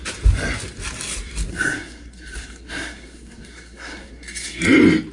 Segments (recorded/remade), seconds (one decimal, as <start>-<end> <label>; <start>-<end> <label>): 0.0-1.5 recorded; 1.5-4.6 remade; 4.6-5.1 recorded